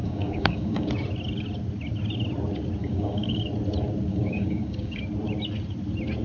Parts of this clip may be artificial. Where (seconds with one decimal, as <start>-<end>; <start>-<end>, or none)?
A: 0.0-0.9; 2.8-3.4; 4.1-5.0